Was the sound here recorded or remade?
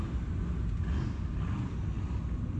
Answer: recorded